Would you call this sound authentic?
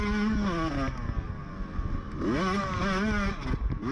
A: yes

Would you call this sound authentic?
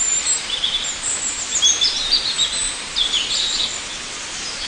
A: no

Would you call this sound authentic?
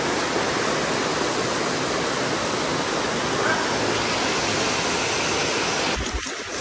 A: yes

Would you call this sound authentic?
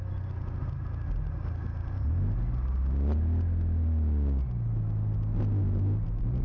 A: yes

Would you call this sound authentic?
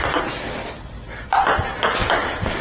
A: yes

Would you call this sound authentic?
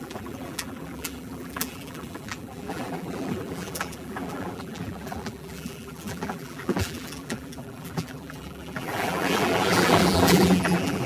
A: no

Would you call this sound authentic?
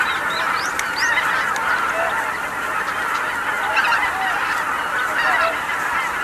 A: yes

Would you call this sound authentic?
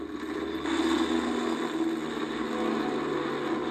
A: yes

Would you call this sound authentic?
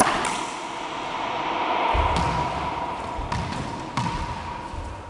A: yes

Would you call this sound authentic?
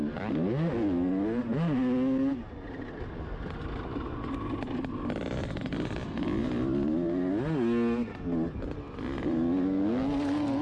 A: yes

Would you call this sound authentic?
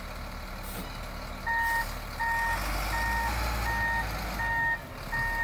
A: yes